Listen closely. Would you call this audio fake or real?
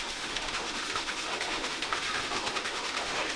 fake